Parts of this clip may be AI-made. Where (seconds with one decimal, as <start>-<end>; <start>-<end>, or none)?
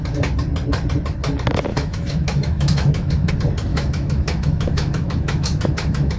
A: 1.7-3.3; 3.7-6.2